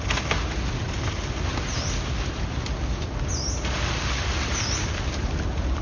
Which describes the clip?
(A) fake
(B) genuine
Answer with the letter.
B